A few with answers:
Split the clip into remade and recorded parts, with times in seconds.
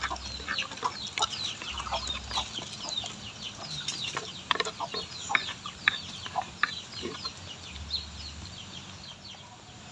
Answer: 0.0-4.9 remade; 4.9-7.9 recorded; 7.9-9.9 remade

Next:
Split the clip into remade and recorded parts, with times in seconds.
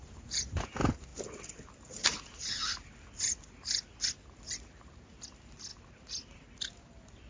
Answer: 0.0-0.7 remade; 0.7-1.1 recorded; 1.1-4.0 remade; 4.0-7.3 recorded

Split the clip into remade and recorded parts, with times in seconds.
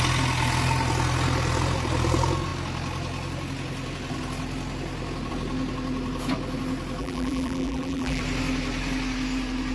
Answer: 0.0-7.0 recorded; 7.0-8.2 remade; 8.2-9.7 recorded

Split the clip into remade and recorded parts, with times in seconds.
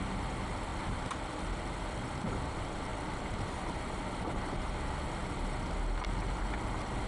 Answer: 0.0-2.9 recorded; 2.9-4.8 remade; 4.8-7.1 recorded